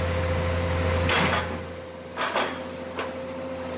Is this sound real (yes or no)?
yes